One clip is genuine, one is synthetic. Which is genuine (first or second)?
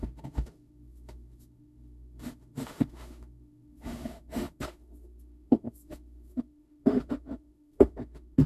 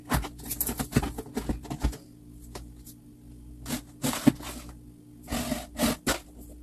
second